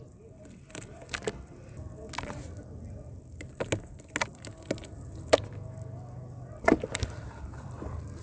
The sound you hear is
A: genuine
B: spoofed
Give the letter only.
A